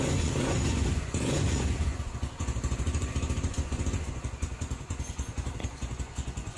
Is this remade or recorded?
remade